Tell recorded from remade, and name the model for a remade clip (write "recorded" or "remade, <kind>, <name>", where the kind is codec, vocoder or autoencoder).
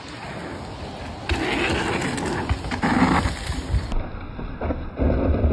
recorded